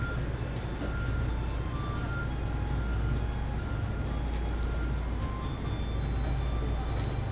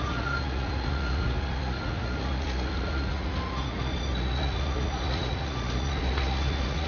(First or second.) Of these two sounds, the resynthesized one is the second